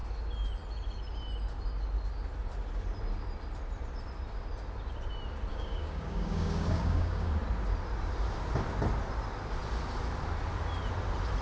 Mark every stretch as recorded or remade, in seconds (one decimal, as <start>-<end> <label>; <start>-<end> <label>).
0.0-5.5 recorded; 5.5-7.3 remade; 7.3-11.4 recorded